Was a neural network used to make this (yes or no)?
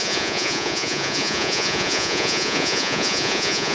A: yes